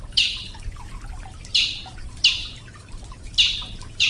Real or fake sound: real